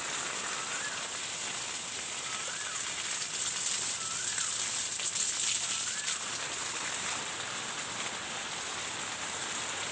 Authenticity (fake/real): real